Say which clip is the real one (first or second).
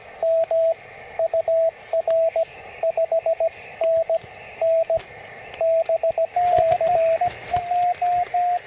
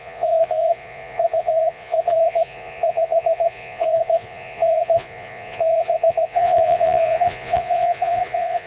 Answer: first